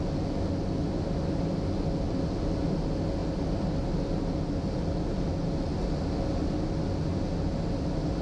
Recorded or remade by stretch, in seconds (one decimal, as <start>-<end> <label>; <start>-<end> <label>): 0.0-8.2 recorded